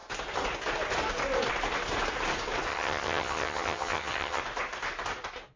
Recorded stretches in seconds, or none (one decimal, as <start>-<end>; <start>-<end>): 0.0-2.7; 4.4-5.6